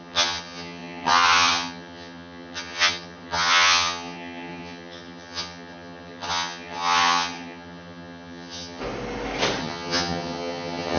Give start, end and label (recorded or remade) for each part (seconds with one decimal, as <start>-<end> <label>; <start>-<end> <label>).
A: 0.0-8.8 remade; 8.8-9.6 recorded; 9.6-11.0 remade